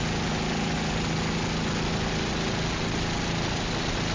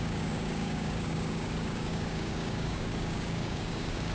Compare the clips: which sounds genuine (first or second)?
first